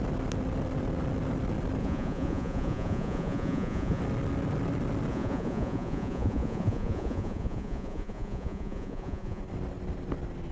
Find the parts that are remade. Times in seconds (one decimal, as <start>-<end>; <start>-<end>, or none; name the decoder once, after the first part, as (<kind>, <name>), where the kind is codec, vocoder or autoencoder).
1.8-4.0 (vocoder, Vocos); 5.1-9.4